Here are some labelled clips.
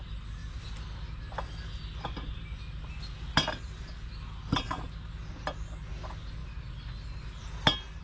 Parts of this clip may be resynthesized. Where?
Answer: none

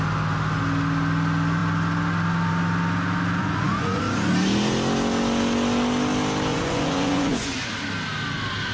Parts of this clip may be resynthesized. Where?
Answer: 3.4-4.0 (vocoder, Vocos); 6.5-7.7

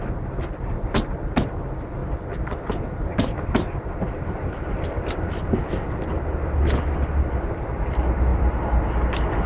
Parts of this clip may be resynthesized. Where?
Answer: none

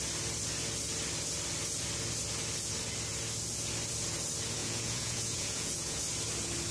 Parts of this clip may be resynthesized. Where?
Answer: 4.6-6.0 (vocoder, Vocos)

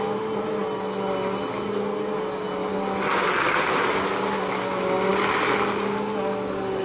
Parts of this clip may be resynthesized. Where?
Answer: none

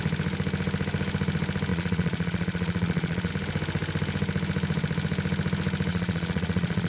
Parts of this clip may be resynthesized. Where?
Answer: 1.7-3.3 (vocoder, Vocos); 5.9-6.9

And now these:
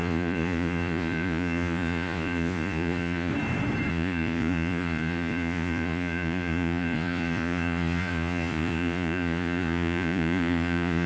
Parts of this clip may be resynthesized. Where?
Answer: 0.0-3.3 (vocoder, Vocos); 3.9-11.1